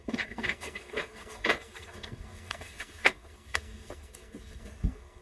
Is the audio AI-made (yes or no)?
yes